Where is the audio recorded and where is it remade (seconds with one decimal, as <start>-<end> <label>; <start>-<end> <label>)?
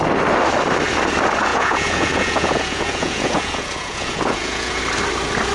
0.0-1.5 recorded; 1.5-4.8 remade; 4.8-5.5 recorded